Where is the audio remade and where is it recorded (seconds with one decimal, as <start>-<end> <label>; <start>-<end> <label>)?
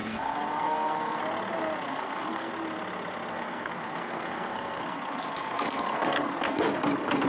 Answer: 0.0-1.2 remade; 1.2-1.9 recorded; 1.9-2.5 remade; 2.5-3.3 recorded; 3.3-6.6 remade; 6.6-7.3 recorded